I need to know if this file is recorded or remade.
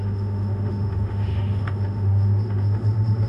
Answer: remade